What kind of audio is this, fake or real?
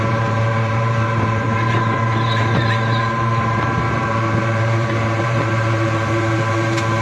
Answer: fake